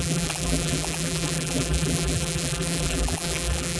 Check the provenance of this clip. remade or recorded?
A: remade